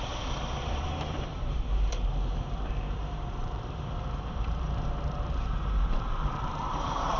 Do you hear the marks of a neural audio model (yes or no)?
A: yes